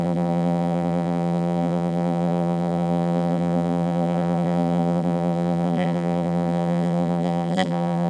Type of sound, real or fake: fake